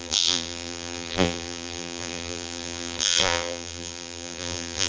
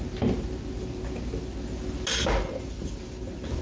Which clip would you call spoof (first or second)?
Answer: first